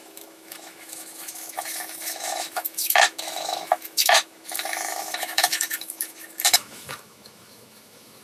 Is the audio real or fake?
fake